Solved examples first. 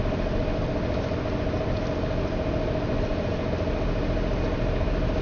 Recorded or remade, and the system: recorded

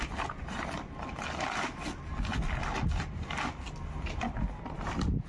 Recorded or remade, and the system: recorded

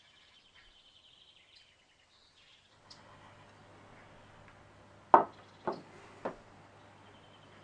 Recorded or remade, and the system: recorded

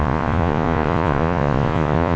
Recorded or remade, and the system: remade, vocoder, Vocos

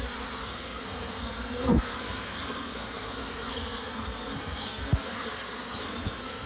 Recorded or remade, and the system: remade, codec, SNAC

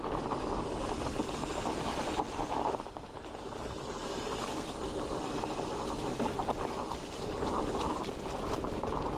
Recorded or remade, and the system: recorded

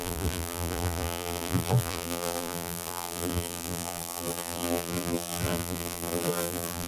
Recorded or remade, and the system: remade, vocoder, BigVGAN v2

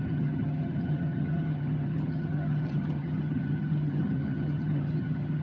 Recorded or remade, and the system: remade, vocoder, HiFi-GAN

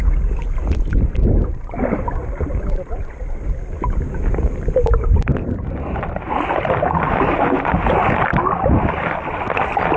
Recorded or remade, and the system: recorded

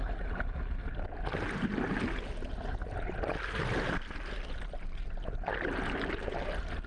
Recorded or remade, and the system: recorded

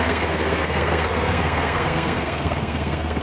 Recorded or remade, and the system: remade, codec, SNAC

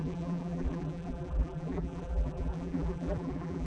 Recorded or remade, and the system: remade, vocoder, BigVGAN v2